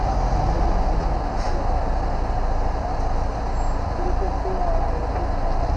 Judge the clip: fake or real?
real